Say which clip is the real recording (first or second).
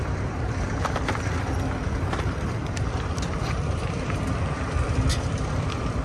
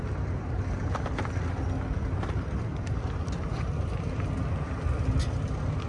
second